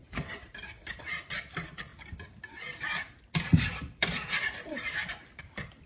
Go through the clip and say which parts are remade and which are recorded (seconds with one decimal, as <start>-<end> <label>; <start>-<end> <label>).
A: 0.0-1.0 remade; 1.0-1.9 recorded; 1.9-5.4 remade; 5.4-5.9 recorded